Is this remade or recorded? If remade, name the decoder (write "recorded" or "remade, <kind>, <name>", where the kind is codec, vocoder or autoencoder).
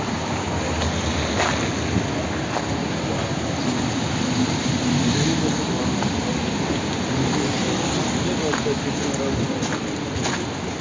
recorded